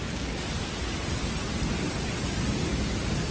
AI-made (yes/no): no